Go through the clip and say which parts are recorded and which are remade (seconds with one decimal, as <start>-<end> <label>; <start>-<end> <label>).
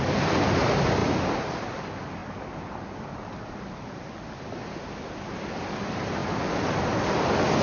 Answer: 0.0-7.6 recorded